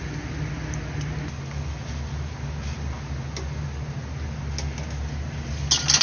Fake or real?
real